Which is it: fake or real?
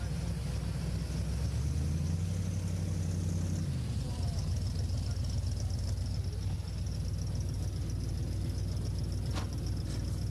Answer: real